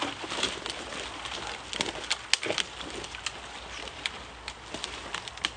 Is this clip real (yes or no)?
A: yes